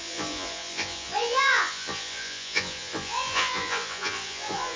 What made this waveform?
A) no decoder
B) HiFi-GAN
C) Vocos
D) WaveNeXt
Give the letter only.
C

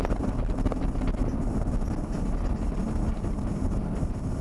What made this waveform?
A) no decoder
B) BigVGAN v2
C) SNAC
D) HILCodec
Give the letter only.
A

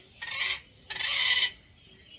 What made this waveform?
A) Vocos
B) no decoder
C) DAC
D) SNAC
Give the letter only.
B